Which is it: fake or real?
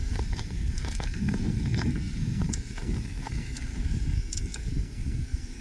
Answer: fake